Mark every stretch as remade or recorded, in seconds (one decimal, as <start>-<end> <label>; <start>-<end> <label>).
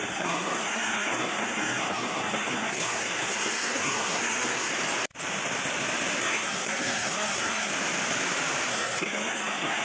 0.0-4.7 remade; 4.7-6.2 recorded; 6.2-7.7 remade; 7.7-8.7 recorded; 8.7-9.8 remade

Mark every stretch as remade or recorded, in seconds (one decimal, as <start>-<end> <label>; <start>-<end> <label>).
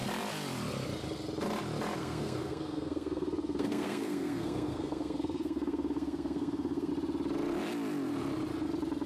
0.0-2.0 recorded; 2.0-6.9 remade; 6.9-9.1 recorded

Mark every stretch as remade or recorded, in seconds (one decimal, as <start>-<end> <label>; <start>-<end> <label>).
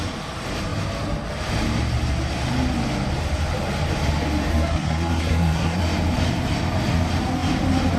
0.0-4.5 recorded; 4.5-5.8 remade; 5.8-8.0 recorded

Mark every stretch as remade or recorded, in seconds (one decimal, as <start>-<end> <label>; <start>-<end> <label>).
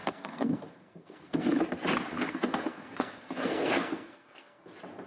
0.0-1.6 remade; 1.6-2.1 recorded; 2.1-4.6 remade; 4.6-5.1 recorded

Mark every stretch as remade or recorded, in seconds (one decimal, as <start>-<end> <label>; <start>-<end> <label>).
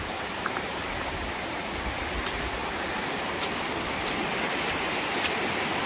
0.0-5.9 recorded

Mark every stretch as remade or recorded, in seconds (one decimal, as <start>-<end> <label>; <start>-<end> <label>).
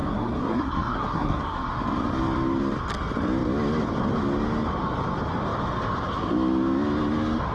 0.0-1.7 remade; 1.7-7.5 recorded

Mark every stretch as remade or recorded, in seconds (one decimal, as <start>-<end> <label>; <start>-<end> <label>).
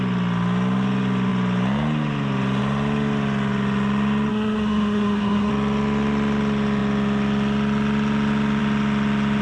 0.0-4.3 recorded; 4.3-5.5 remade; 5.5-9.4 recorded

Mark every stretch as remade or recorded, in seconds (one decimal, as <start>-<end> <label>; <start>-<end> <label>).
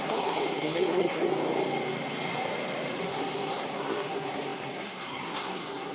0.0-1.3 remade; 1.3-3.0 recorded; 3.0-5.9 remade